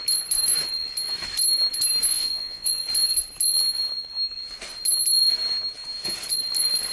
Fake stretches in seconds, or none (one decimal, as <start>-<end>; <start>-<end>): 2.1-2.8